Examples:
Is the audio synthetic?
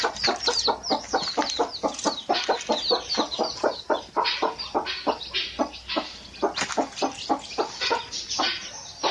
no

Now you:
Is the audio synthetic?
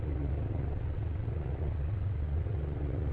yes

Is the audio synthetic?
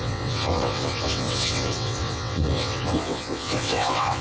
yes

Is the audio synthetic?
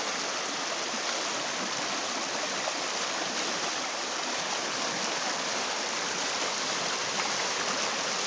no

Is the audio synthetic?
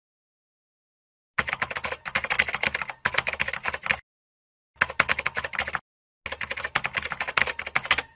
no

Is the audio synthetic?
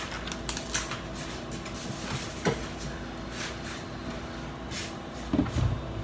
no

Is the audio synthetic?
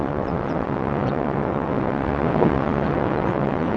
yes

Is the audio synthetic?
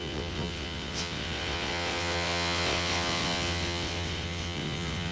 yes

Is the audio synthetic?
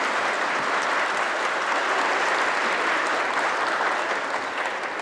no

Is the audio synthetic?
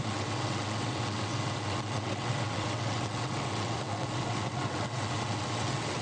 yes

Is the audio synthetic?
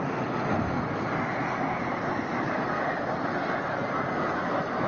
no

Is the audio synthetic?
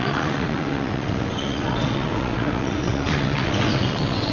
yes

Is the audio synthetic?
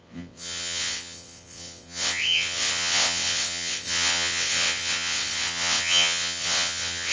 yes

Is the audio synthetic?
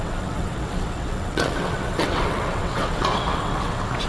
yes